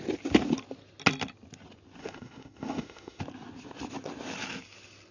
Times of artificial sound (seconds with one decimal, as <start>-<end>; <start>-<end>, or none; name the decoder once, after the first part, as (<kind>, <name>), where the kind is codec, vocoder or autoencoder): 2.0-3.2 (autoencoder, DAC-VAE)

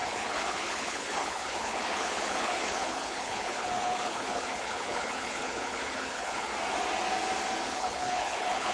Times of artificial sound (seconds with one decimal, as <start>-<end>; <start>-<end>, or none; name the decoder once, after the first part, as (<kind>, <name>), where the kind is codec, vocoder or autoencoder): 0.0-6.5 (codec, HILCodec); 7.6-8.7

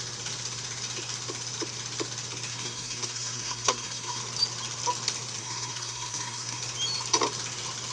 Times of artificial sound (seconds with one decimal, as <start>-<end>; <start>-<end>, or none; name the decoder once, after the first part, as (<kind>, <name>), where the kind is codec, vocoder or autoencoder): 2.5-4.2 (codec, SNAC); 5.4-6.6

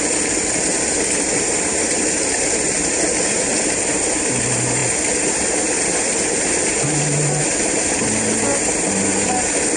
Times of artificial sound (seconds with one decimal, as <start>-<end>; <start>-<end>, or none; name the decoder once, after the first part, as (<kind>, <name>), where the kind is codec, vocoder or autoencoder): none